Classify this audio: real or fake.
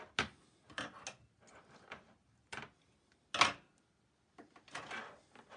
real